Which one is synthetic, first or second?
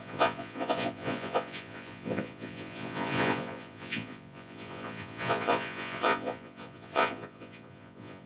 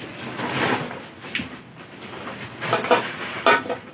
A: first